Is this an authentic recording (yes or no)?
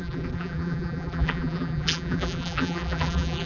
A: no